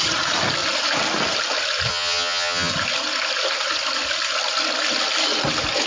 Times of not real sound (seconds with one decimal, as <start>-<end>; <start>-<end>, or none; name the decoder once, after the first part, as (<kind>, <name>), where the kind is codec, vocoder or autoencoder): 1.9-2.7 (vocoder, HiFi-GAN)